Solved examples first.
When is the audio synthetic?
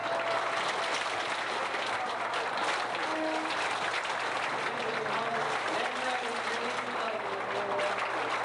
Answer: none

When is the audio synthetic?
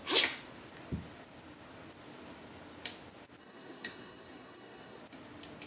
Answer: 3.4-5.0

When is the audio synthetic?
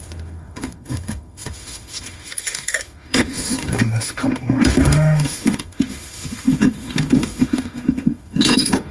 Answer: 0.0-8.9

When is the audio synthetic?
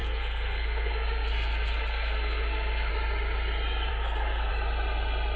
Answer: 0.0-2.9; 3.9-4.5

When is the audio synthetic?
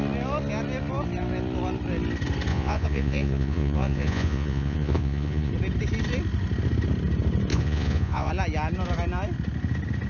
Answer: 2.5-5.5; 7.5-8.3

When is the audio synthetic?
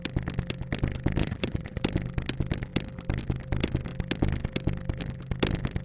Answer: 1.2-1.8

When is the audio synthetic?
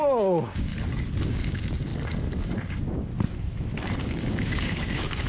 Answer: 0.0-0.7; 1.3-1.9; 2.7-3.1; 4.0-5.3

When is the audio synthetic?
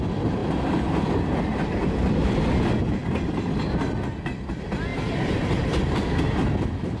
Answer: 0.4-1.1; 4.9-6.2